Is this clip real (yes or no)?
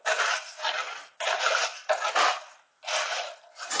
yes